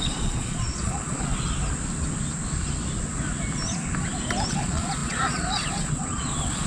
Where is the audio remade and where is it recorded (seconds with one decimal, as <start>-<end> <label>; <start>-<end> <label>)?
0.0-1.3 remade; 1.3-4.5 recorded; 4.5-6.7 remade